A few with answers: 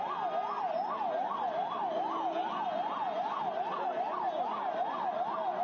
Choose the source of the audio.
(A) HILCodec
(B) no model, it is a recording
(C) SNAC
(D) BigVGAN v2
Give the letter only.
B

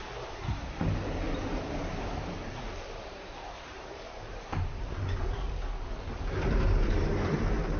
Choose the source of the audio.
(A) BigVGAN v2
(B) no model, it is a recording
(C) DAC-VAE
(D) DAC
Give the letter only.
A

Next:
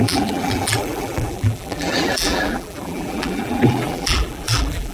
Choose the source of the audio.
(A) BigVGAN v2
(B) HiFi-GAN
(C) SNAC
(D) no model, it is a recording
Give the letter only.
A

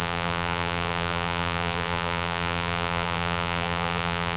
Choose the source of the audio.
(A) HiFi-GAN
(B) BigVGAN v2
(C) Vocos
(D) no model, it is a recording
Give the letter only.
B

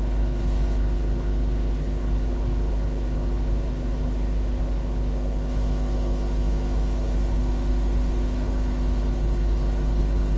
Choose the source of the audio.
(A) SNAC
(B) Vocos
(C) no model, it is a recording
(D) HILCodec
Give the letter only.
D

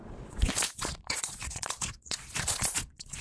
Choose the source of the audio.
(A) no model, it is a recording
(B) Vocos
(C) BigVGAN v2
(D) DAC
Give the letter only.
B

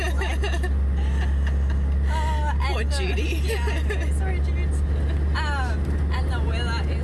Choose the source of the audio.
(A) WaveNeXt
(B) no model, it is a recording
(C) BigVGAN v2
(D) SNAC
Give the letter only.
B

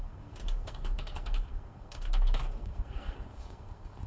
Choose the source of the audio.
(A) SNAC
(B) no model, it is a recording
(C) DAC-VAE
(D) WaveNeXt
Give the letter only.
A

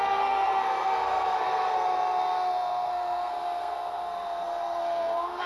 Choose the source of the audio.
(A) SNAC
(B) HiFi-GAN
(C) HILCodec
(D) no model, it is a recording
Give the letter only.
A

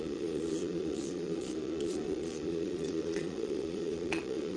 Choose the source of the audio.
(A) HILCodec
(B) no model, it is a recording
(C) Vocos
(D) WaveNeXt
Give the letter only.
C